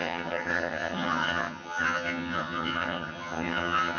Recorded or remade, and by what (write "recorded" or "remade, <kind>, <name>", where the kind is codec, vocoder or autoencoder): remade, vocoder, HiFi-GAN